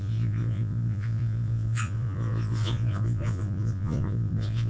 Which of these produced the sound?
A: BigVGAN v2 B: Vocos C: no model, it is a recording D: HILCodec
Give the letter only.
B